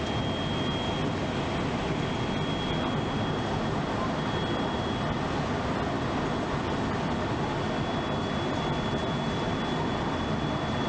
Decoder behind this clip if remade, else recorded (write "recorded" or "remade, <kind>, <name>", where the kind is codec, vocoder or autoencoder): recorded